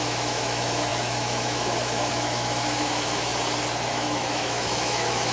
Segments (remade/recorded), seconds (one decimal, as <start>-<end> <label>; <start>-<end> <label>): 0.0-3.3 remade; 3.3-3.9 recorded; 3.9-5.3 remade